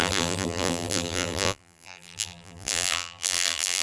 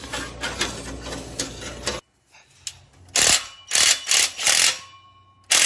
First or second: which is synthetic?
first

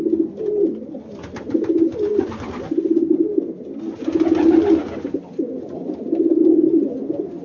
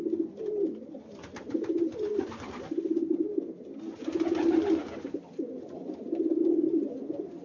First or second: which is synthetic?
second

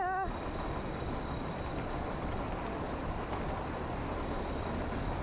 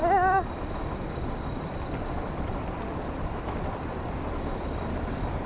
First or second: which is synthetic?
second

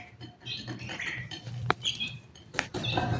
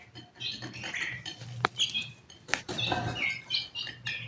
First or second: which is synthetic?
first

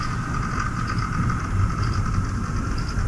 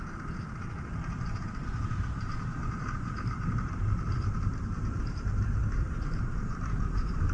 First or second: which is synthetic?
second